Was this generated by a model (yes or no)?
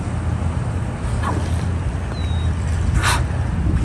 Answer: no